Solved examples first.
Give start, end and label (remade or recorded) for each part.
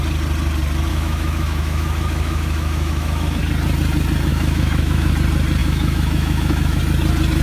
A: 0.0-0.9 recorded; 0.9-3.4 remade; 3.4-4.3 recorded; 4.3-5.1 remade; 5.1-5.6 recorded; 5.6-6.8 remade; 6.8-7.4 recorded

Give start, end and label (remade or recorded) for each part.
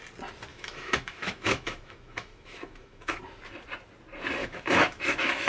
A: 0.0-0.5 recorded; 0.5-3.2 remade; 3.2-4.4 recorded; 4.4-5.5 remade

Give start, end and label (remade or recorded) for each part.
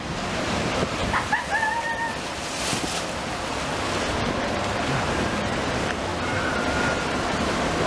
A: 0.0-1.0 remade; 1.0-4.4 recorded; 4.4-6.1 remade; 6.1-7.0 recorded; 7.0-7.9 remade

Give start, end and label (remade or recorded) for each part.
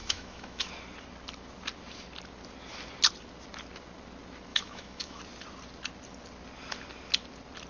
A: 0.0-0.7 remade; 0.7-4.5 recorded; 4.5-5.2 remade; 5.2-7.7 recorded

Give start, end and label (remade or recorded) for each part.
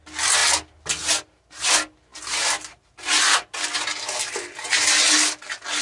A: 0.0-5.8 recorded